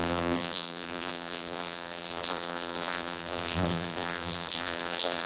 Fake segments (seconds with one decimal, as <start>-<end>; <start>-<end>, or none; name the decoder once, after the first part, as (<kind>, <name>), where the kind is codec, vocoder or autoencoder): 0.0-5.3 (vocoder, BigVGAN v2)

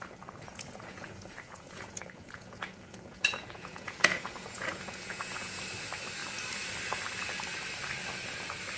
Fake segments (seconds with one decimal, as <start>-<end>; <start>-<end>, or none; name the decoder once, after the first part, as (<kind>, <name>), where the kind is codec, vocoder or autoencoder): 0.5-5.6 (vocoder, Vocos)